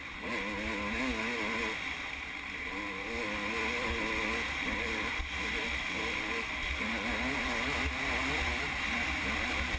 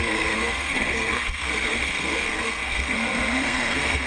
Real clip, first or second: first